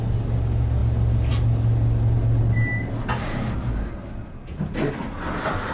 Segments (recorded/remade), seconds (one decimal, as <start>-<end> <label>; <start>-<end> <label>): 0.0-5.7 recorded

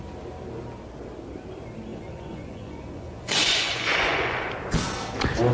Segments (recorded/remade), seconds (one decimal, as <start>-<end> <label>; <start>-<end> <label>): 0.0-1.9 recorded; 1.9-4.5 remade; 4.5-5.5 recorded

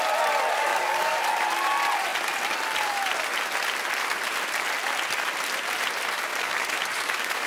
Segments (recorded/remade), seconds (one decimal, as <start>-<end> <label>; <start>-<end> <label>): 0.0-0.7 recorded; 0.7-1.2 remade; 1.2-6.3 recorded; 6.3-7.5 remade

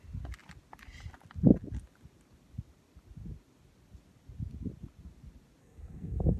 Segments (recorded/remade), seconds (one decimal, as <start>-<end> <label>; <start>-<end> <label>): 0.0-5.6 recorded; 5.6-6.4 remade

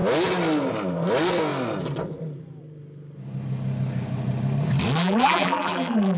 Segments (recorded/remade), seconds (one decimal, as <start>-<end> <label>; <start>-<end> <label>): 0.0-5.0 recorded; 5.0-6.2 remade